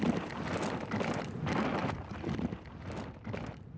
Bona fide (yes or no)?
yes